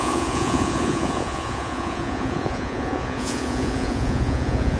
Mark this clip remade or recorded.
remade